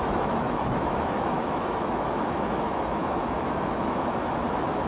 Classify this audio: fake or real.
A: fake